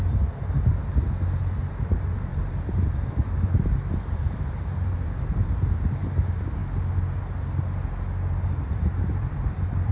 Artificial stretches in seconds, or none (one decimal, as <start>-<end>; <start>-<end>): 2.3-5.5; 9.2-9.9